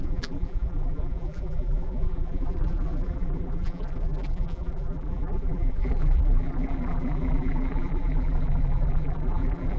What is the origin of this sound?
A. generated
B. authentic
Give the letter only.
A